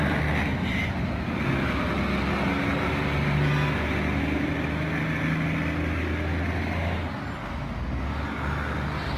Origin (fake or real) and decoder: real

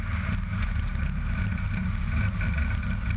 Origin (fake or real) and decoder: real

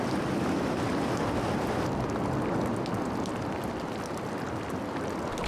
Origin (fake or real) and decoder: real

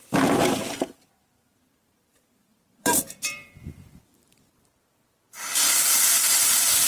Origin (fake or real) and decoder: fake, vocoder, BigVGAN v2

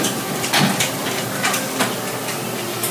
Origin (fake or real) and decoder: real